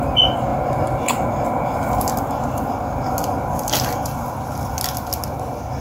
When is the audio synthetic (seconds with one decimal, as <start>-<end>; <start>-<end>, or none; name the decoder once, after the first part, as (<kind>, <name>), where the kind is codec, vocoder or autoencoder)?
none

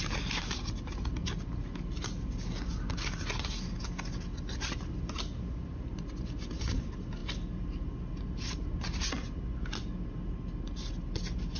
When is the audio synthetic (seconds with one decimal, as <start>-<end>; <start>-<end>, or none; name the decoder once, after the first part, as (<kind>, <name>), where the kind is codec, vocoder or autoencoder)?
none

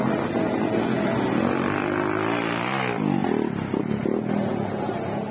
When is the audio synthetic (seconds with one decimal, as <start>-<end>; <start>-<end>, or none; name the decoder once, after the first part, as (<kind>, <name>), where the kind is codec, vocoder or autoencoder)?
none

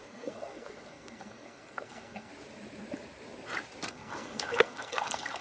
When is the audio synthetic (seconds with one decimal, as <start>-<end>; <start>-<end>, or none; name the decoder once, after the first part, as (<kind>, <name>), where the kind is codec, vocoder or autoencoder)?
0.0-2.3 (codec, SNAC); 3.9-5.4